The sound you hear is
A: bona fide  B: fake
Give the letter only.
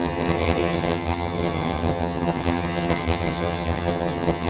B